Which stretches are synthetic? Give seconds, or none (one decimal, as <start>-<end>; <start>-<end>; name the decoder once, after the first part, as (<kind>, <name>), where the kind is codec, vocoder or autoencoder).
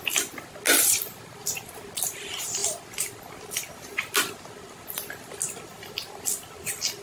none